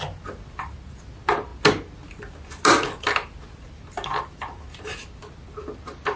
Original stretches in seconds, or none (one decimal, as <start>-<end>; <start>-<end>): 0.0-6.2